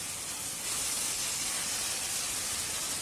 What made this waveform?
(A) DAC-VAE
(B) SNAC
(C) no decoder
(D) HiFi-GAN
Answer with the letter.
C